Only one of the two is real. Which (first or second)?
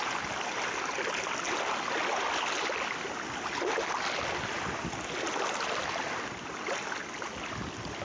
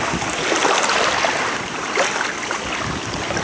first